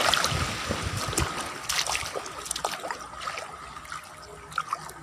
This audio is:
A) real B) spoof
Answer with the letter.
A